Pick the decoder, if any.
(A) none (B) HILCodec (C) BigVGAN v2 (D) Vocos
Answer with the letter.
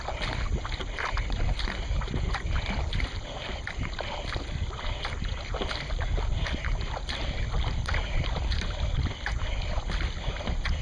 A